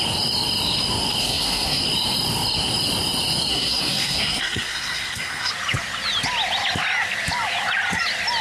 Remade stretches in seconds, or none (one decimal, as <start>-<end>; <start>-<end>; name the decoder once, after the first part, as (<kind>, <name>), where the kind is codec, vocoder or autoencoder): 1.2-1.8 (codec, SNAC); 3.5-5.5